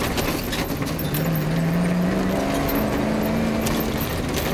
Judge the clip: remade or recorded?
recorded